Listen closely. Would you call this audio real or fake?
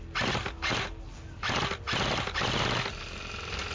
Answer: real